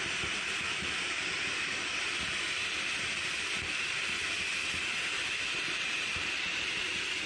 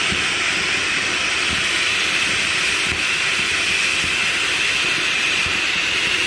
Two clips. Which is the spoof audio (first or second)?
first